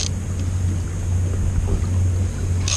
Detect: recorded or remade recorded